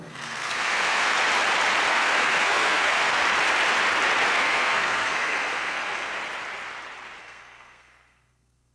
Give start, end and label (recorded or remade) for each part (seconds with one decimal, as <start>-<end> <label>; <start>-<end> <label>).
0.0-1.1 remade; 1.1-1.9 recorded; 1.9-3.2 remade; 3.2-4.3 recorded; 4.3-6.1 remade; 6.1-7.2 recorded; 7.2-8.7 remade